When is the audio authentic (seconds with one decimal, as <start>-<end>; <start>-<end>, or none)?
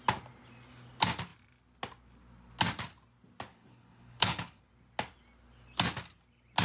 0.0-3.5; 4.6-6.6